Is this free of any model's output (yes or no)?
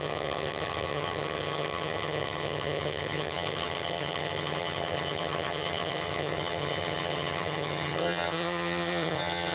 no